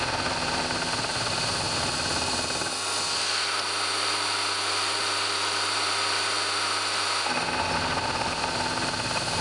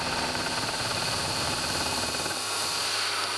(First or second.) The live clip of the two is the first